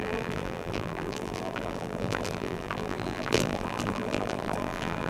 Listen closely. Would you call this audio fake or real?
fake